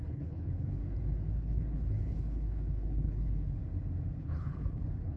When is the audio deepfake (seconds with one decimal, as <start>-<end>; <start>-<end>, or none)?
0.0-0.8; 1.3-3.6; 4.2-5.2